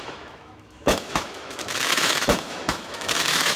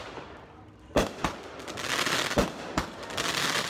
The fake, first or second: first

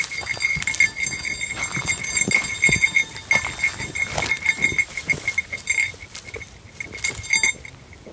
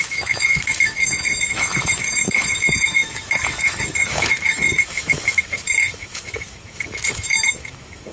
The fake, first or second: second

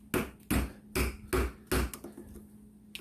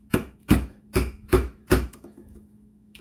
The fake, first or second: second